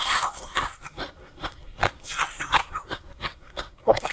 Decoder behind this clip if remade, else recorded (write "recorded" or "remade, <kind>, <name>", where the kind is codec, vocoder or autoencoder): remade, codec, SNAC